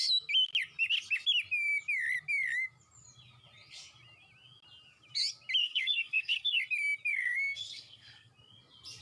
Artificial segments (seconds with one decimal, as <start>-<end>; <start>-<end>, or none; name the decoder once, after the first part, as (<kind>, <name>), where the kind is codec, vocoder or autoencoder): 5.6-6.6 (codec, SNAC); 7.1-8.3